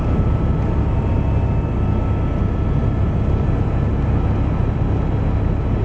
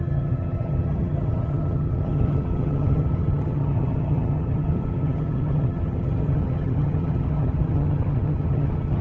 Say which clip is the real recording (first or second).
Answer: first